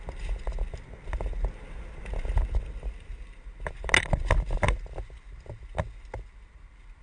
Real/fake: real